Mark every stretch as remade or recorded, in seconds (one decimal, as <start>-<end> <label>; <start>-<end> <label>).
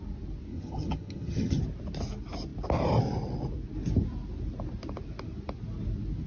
0.0-0.5 recorded; 0.5-1.6 remade; 1.6-6.3 recorded